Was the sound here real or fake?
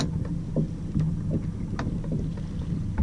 real